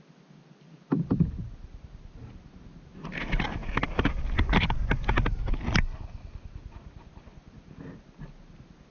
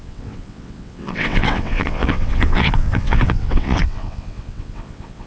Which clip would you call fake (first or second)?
second